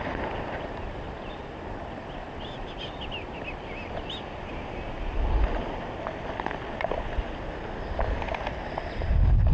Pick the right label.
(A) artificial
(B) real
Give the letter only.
B